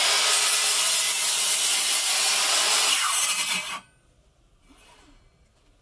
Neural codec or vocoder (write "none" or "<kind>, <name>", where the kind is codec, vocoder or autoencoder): vocoder, BigVGAN v2